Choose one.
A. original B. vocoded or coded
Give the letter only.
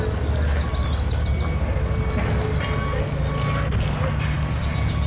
A